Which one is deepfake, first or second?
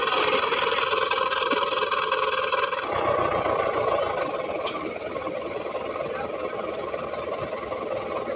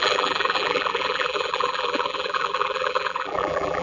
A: second